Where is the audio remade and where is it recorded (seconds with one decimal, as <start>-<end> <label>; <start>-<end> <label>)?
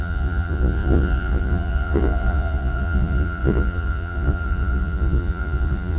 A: 0.0-6.0 remade